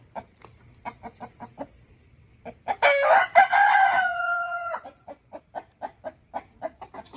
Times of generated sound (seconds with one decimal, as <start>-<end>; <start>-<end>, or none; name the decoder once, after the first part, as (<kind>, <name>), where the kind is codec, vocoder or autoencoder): 3.6-5.4 (vocoder, Vocos)